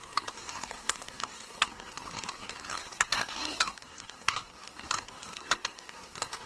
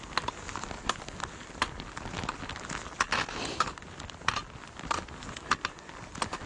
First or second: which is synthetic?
first